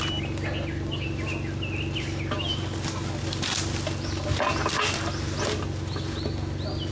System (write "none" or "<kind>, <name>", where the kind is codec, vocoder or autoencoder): none